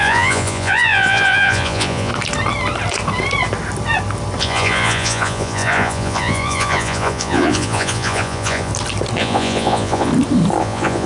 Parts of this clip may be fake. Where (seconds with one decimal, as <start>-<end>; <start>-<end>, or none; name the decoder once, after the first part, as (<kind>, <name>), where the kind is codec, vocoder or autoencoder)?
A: 0.0-2.1 (vocoder, Vocos); 4.4-8.7; 9.2-10.1; 10.6-11.1